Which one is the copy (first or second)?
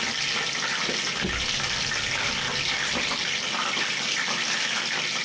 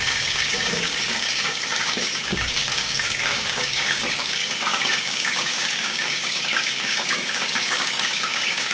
second